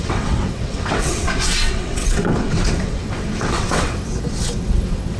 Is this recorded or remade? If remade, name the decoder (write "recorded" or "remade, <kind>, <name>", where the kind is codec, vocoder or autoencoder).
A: remade, vocoder, WaveNeXt